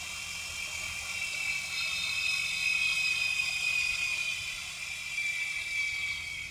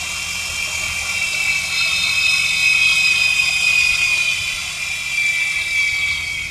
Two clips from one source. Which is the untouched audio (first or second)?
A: second